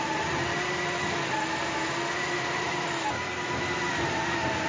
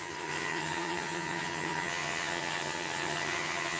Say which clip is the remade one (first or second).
second